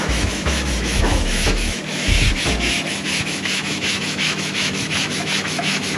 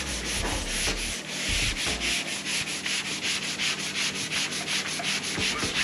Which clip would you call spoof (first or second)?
first